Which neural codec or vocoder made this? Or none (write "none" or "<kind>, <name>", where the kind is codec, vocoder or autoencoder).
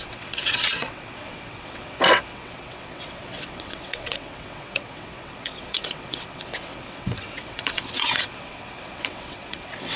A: vocoder, WaveNeXt